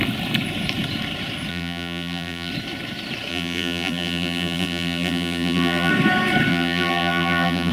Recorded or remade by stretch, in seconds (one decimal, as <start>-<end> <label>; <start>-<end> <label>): 0.0-1.5 recorded; 1.5-2.5 remade; 2.5-3.3 recorded; 3.3-5.9 remade; 5.9-6.5 recorded; 6.5-7.7 remade